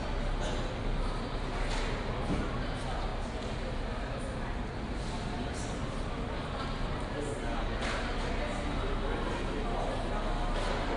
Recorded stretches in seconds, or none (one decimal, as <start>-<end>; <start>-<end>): 0.0-11.0